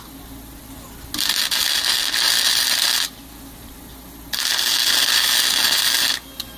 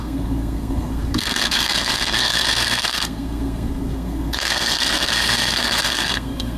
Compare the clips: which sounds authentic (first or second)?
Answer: first